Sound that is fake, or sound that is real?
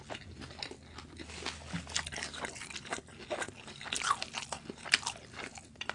real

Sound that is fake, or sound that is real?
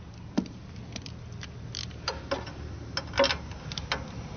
real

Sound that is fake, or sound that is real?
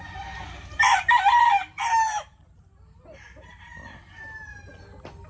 real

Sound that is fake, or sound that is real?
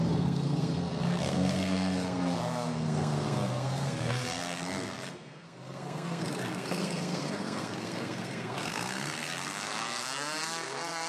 fake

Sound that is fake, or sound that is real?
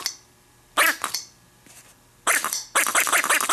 real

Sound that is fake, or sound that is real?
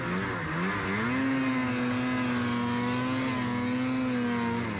real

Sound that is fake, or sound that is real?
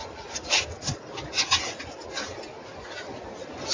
real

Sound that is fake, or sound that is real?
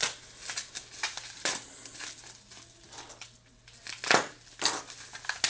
real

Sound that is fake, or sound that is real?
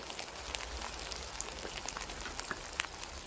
real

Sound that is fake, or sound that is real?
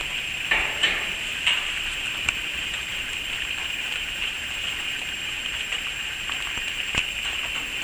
fake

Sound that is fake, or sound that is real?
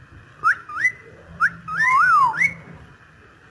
real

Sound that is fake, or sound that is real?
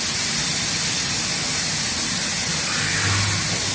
real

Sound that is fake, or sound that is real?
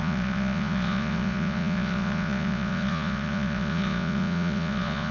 fake